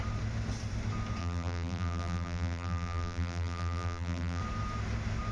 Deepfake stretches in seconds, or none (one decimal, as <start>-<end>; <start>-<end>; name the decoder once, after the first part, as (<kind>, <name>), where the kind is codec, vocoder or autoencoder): 1.2-4.4 (vocoder, BigVGAN v2)